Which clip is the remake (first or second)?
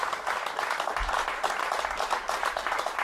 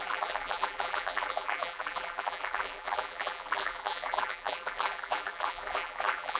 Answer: second